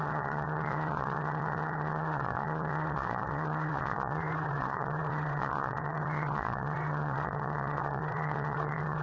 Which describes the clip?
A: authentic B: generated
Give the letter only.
B